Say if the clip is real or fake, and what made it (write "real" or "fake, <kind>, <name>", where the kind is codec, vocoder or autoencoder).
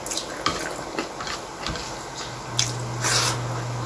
real